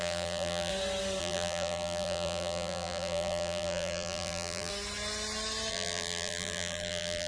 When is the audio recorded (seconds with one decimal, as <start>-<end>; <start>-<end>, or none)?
0.7-1.2; 4.7-5.7